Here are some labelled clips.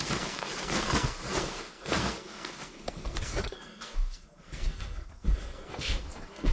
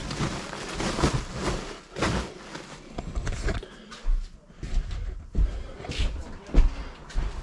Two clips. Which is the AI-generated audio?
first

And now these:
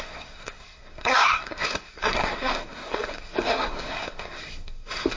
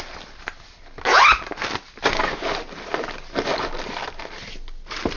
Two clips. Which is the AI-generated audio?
first